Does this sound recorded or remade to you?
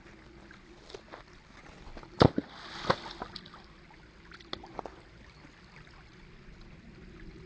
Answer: recorded